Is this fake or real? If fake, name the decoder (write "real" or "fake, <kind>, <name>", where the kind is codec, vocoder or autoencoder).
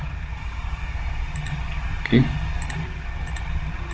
real